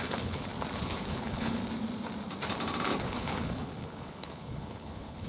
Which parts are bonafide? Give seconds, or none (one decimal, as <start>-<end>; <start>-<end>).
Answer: 0.5-1.1; 1.6-3.0